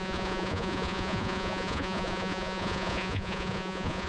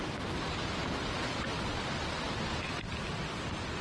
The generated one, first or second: first